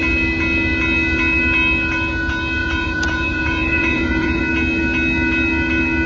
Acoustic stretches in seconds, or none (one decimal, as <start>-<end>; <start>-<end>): 0.0-2.6; 4.4-6.1